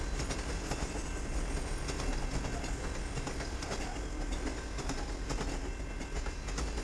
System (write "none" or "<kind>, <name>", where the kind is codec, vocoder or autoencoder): none